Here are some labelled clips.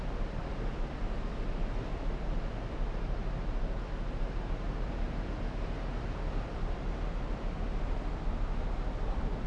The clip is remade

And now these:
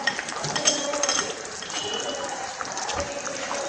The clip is remade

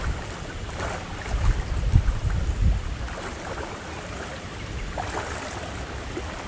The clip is recorded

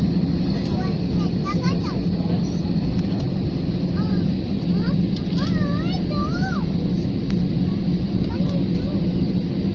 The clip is recorded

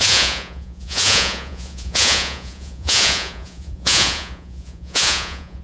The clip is remade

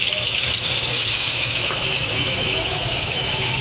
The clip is remade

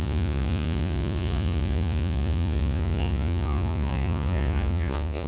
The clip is remade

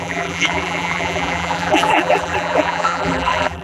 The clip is remade